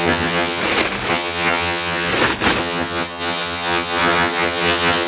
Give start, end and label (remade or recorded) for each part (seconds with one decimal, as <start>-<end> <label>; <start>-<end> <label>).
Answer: 0.0-0.6 remade; 0.6-1.1 recorded; 1.1-2.1 remade; 2.1-2.6 recorded; 2.6-5.1 remade